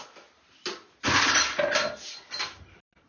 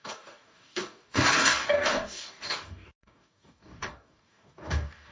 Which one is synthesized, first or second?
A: second